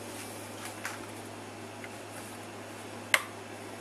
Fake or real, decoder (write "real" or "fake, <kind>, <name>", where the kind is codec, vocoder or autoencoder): real